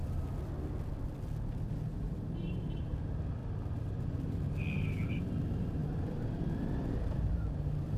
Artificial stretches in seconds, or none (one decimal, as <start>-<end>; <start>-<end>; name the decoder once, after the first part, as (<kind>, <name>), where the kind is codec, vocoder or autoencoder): 0.0-0.5 (vocoder, BigVGAN v2); 3.4-3.9; 5.8-7.3